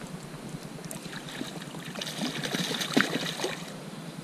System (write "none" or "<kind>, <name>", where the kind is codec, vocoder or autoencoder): none